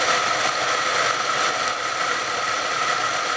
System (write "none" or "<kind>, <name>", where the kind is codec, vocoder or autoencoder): none